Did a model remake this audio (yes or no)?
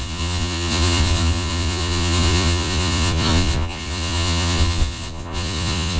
yes